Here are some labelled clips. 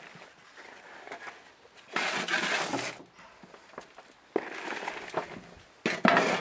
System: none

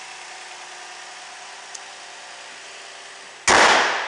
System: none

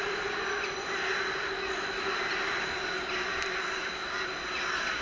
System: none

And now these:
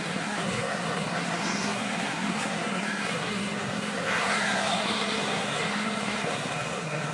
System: codec, SNAC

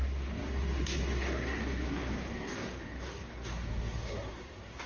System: codec, SNAC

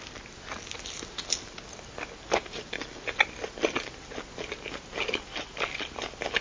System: none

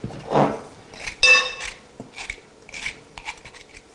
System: none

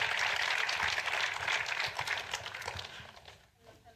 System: none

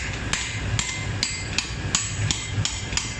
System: none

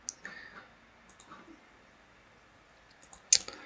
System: none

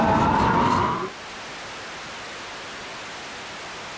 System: none